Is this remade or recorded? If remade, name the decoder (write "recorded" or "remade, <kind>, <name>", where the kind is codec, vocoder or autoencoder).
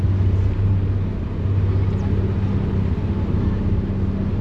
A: recorded